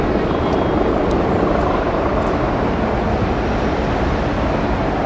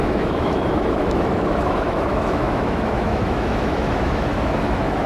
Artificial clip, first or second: second